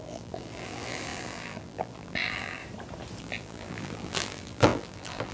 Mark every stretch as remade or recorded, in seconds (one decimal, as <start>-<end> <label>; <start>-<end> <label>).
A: 0.0-2.6 remade; 2.6-3.2 recorded; 3.2-5.3 remade